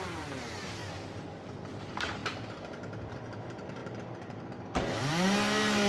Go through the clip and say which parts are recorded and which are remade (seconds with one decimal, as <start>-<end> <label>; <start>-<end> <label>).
0.0-0.8 remade; 0.8-1.8 recorded; 1.8-5.9 remade